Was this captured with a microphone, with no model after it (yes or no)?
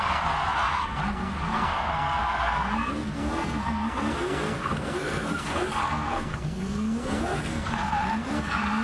no